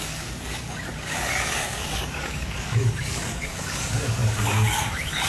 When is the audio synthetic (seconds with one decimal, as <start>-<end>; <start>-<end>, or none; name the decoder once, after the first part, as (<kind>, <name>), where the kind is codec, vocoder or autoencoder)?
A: 0.0-5.3 (codec, DAC)